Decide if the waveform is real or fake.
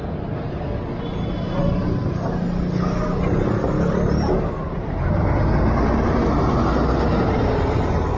real